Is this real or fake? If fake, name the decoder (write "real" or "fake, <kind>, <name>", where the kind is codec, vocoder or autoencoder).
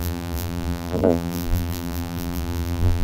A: fake, vocoder, BigVGAN v2